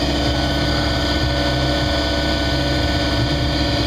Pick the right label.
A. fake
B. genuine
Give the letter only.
B